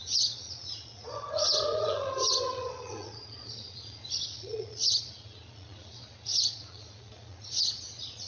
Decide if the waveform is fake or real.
fake